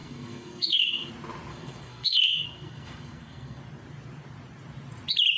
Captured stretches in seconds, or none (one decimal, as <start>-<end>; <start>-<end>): 1.1-1.5; 3.6-5.4